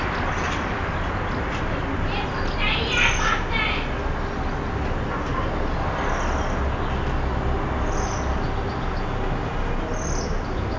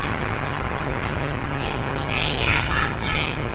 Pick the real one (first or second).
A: first